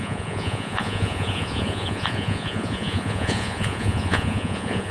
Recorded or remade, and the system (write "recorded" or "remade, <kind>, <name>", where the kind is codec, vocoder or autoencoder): remade, vocoder, Vocos